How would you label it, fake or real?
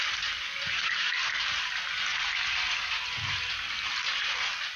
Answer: real